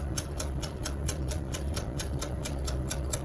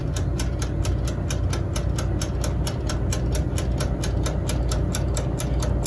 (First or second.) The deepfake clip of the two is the first